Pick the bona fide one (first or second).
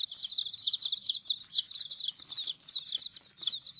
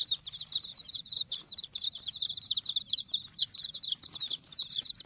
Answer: first